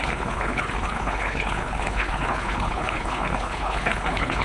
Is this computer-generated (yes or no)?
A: yes